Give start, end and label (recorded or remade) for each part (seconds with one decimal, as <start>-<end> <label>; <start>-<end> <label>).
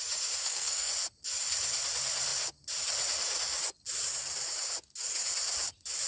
0.0-0.4 recorded; 0.4-0.9 remade; 0.9-6.1 recorded